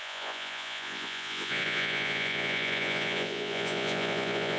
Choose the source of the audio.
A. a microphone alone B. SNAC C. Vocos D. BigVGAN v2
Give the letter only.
C